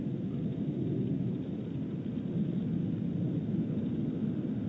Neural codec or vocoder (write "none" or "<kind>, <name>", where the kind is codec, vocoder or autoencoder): none